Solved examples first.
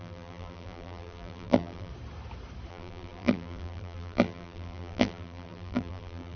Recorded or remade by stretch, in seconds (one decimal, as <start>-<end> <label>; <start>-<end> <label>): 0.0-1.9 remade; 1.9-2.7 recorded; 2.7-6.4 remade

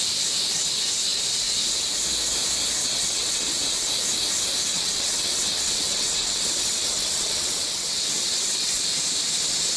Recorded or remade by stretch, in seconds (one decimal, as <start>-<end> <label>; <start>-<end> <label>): 0.0-2.8 recorded; 2.8-3.9 remade; 3.9-4.7 recorded; 4.7-8.8 remade; 8.8-9.8 recorded

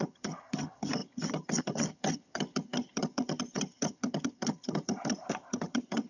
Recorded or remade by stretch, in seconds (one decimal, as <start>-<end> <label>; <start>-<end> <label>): 0.0-6.1 remade

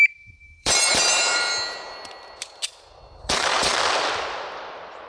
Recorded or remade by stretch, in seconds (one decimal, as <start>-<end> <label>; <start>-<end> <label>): 0.0-1.5 remade; 1.5-3.2 recorded; 3.2-3.7 remade; 3.7-5.1 recorded